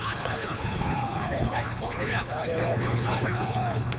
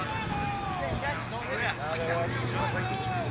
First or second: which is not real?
first